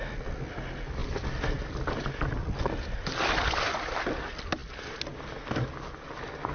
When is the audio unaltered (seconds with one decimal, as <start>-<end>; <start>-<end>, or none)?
0.0-6.5

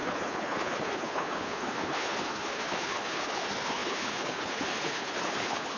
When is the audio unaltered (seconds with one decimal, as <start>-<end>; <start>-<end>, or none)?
none

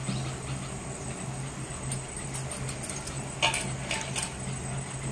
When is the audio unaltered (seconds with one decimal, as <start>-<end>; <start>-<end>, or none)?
0.0-5.1

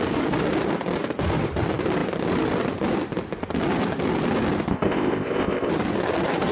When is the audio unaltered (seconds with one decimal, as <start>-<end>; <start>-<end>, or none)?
0.0-4.7; 5.7-6.5

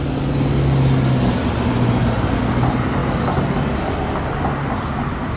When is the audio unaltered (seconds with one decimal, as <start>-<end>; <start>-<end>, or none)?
0.0-5.4

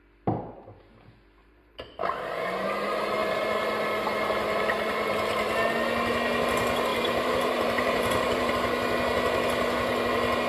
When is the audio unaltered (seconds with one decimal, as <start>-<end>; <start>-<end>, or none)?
0.0-1.4; 2.1-6.9; 8.5-10.5